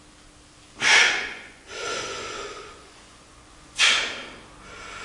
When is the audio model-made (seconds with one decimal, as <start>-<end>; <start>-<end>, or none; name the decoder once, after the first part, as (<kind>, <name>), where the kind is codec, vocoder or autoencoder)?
1.0-4.0 (vocoder, Vocos)